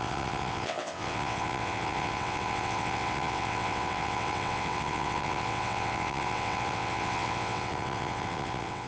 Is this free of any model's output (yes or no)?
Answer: no